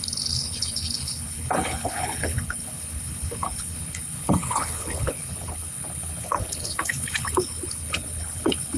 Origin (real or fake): fake